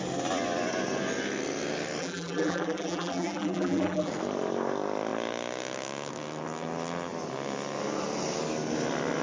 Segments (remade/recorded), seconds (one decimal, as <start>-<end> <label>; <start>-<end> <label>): 0.0-2.0 recorded; 2.0-4.1 remade; 4.1-9.2 recorded